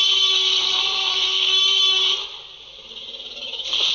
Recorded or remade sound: recorded